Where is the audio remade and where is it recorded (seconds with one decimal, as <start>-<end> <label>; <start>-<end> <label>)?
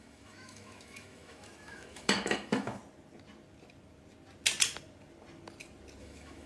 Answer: 0.0-2.8 remade; 2.8-6.0 recorded; 6.0-6.5 remade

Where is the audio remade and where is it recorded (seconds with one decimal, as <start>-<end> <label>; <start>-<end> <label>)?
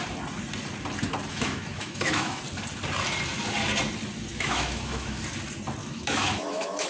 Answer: 0.0-1.3 recorded; 1.3-2.4 remade; 2.4-4.3 recorded; 4.3-5.2 remade; 5.2-5.8 recorded; 5.8-6.9 remade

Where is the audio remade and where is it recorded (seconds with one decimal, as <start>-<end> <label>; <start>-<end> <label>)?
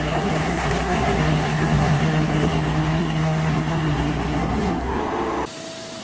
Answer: 0.0-5.0 remade; 5.0-6.0 recorded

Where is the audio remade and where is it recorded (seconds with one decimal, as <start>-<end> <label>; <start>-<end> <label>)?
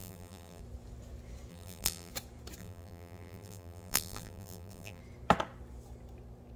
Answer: 0.0-0.6 remade; 0.6-1.5 recorded; 1.5-2.1 remade; 2.1-2.6 recorded; 2.6-5.0 remade; 5.0-6.6 recorded